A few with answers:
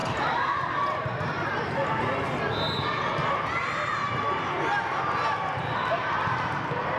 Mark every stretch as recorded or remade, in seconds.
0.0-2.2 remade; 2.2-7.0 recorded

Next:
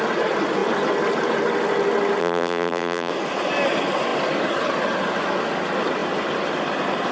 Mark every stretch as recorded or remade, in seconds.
0.0-2.2 recorded; 2.2-3.1 remade; 3.1-7.1 recorded

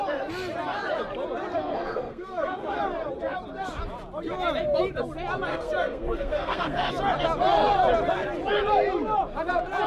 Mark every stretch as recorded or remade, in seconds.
0.0-1.5 recorded; 1.5-2.8 remade; 2.8-5.5 recorded; 5.5-6.9 remade; 6.9-9.9 recorded

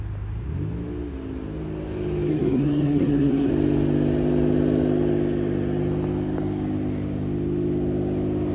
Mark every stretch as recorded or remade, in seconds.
0.0-2.3 recorded; 2.3-3.5 remade; 3.5-8.5 recorded

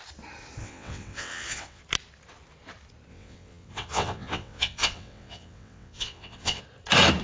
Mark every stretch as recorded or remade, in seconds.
0.0-0.6 recorded; 0.6-1.8 remade; 1.8-3.1 recorded; 3.1-6.6 remade; 6.6-7.2 recorded

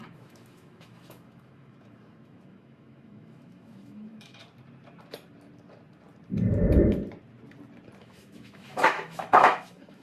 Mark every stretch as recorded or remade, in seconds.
0.0-4.4 remade; 4.4-8.0 recorded; 8.0-10.0 remade